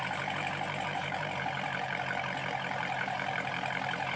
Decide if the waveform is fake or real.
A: fake